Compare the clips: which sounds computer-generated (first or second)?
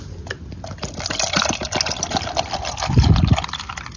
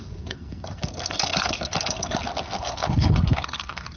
second